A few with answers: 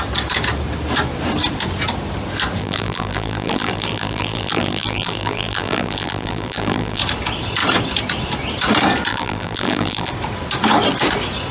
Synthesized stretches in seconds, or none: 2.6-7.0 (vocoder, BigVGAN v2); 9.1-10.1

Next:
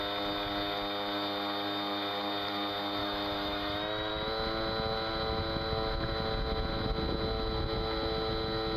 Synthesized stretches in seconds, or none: 3.0-4.1 (autoencoder, DAC-VAE)

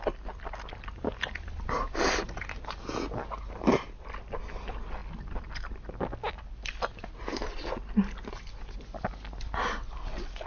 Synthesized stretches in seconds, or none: none

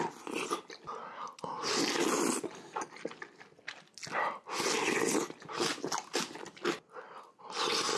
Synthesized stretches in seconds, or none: none

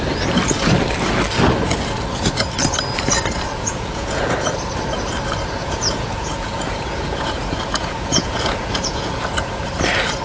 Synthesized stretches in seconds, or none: 3.5-4.3 (vocoder, Vocos); 5.6-9.7

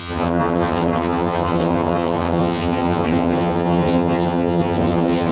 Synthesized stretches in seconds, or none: 0.0-5.3 (vocoder, HiFi-GAN)

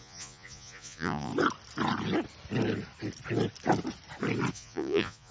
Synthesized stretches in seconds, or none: 0.0-1.3 (vocoder, Vocos); 4.5-5.3